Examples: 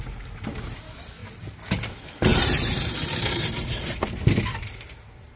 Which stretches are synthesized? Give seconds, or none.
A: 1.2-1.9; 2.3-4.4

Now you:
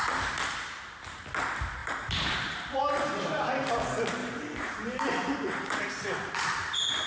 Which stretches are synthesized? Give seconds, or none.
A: 1.8-2.8; 4.2-5.8

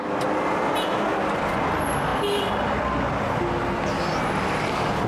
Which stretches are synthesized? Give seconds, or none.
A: none

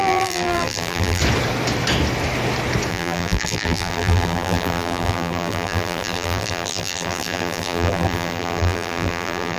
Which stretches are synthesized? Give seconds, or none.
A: 0.0-1.2; 2.9-9.6

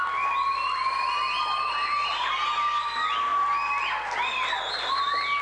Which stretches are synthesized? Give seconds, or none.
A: none